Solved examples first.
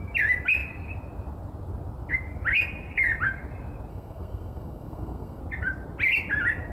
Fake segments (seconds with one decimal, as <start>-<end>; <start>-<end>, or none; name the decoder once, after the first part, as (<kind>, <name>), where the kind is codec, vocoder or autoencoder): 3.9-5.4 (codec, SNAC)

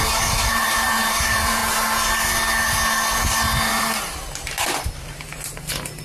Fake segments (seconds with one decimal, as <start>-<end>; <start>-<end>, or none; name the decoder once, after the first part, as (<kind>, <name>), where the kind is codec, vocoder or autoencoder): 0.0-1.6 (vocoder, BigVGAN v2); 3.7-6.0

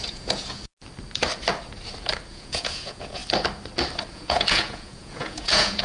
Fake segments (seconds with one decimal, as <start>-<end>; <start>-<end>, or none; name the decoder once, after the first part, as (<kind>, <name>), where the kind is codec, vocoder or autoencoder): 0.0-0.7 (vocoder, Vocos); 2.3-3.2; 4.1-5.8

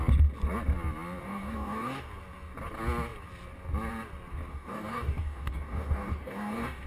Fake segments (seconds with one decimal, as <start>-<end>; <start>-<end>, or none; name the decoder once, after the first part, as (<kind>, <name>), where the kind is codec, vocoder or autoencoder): 1.2-2.1 (codec, DAC); 4.5-6.9